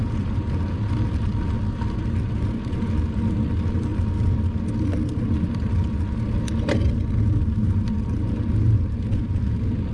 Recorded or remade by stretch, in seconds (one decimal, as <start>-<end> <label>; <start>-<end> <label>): 0.0-9.9 recorded